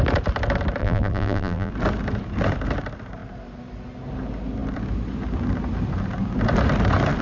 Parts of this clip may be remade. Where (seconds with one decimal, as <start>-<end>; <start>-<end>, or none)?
0.8-1.7